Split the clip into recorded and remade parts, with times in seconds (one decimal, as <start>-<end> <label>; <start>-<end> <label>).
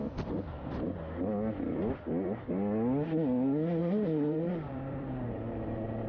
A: 0.0-0.5 recorded; 0.5-1.0 remade; 1.0-3.8 recorded; 3.8-6.1 remade